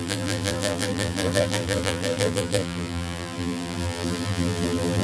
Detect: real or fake fake